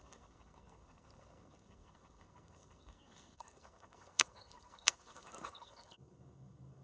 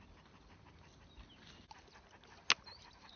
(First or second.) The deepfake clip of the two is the first